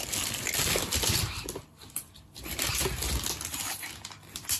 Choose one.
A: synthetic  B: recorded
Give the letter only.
B